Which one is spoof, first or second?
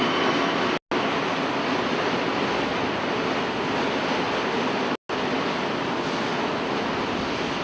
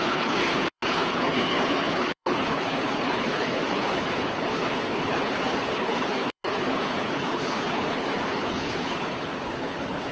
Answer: second